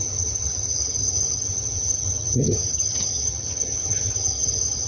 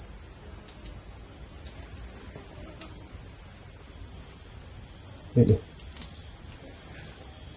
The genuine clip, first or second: second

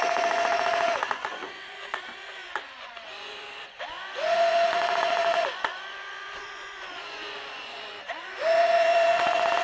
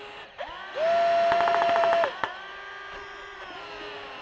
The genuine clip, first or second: second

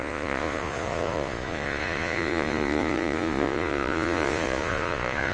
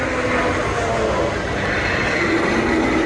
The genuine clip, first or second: second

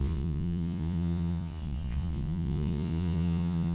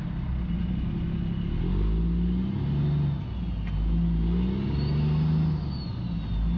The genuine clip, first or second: second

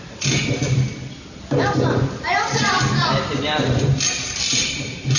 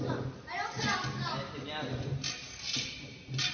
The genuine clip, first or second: second